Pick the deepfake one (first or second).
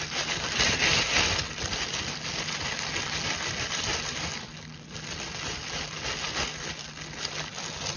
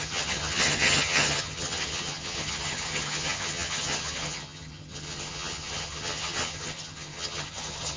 second